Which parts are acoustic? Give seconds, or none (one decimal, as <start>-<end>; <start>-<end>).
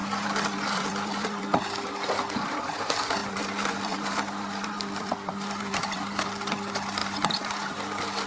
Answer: 1.4-3.2; 6.3-7.0